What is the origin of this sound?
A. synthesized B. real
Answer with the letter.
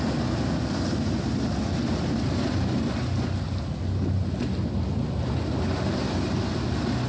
B